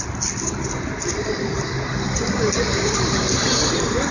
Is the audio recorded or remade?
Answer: recorded